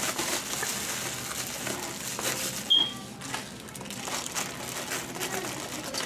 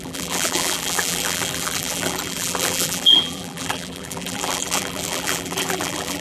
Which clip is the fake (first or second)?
second